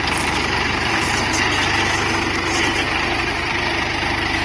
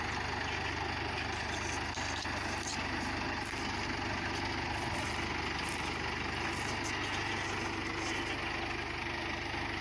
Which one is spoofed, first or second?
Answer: first